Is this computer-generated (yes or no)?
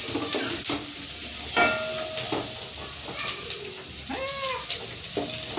no